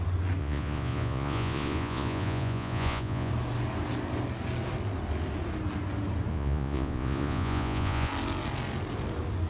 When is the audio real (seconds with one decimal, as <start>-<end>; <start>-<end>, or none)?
0.0-0.4; 3.3-6.3; 8.1-9.5